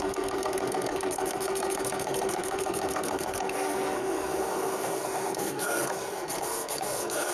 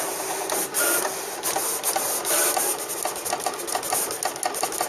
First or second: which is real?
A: second